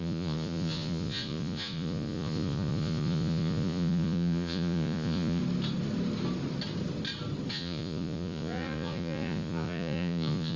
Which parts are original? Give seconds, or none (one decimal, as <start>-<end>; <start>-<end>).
5.4-7.5